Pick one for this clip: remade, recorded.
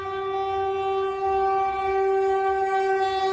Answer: recorded